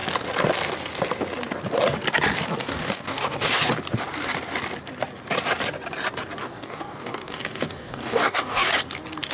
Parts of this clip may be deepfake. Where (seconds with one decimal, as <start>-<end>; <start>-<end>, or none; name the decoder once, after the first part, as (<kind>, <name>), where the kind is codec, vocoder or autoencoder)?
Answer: 2.6-3.6 (codec, DAC); 6.4-8.7